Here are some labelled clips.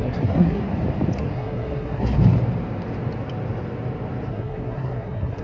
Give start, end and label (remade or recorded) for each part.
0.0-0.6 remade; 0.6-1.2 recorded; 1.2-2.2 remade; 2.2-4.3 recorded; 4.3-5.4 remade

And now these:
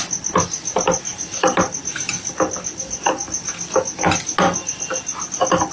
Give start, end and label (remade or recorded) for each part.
0.0-1.1 recorded; 1.1-1.8 remade; 1.8-5.7 recorded

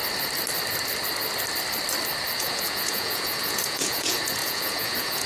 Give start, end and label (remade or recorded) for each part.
0.0-2.4 recorded; 2.4-5.3 remade